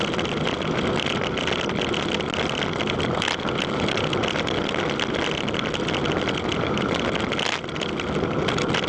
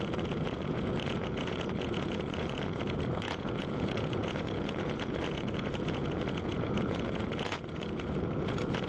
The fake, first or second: second